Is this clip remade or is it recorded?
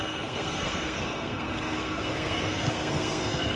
remade